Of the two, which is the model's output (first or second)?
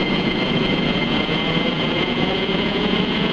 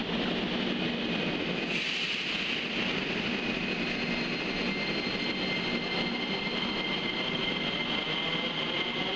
first